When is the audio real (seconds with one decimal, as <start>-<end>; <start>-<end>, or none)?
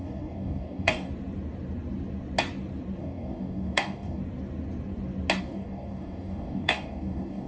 1.1-3.0; 4.2-5.4